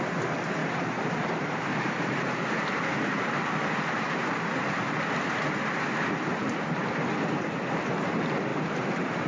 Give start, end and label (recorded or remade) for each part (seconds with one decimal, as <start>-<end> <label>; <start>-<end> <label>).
0.0-0.6 recorded; 0.6-4.4 remade; 4.4-8.5 recorded; 8.5-9.3 remade